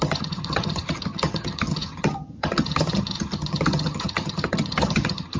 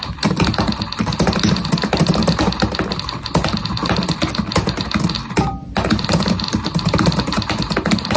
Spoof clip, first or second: first